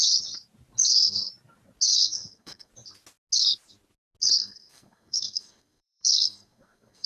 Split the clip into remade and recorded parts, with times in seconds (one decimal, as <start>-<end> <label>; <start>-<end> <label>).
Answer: 0.0-0.8 recorded; 0.8-1.3 remade; 1.3-2.0 recorded; 2.0-2.7 remade; 2.7-4.4 recorded; 4.4-7.1 remade